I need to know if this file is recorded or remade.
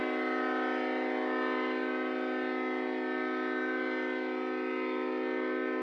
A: recorded